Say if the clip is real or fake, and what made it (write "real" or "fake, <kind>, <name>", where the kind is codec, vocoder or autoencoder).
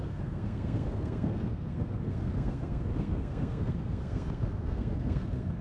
fake, codec, SNAC